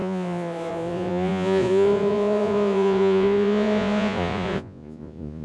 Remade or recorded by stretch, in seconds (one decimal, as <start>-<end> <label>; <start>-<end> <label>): 0.0-5.4 remade